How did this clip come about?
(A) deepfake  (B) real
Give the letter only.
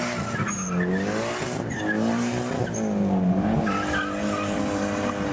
B